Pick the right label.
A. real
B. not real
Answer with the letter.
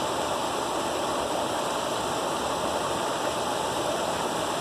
A